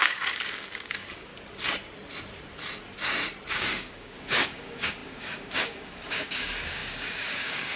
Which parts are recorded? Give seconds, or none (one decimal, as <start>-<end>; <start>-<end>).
1.3-3.5